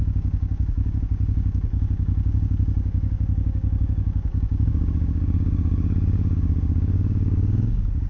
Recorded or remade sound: remade